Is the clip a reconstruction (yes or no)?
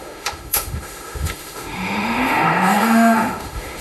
yes